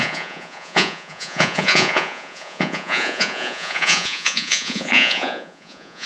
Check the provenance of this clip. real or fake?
fake